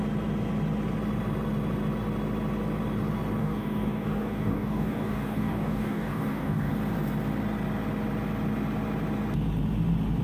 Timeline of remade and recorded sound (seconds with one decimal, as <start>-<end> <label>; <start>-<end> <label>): 0.0-3.4 recorded; 3.4-6.7 remade; 6.7-10.2 recorded